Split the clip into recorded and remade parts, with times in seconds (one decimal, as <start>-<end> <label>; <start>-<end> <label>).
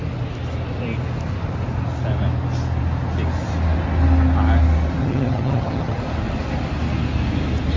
0.0-5.0 recorded; 5.0-6.0 remade; 6.0-7.8 recorded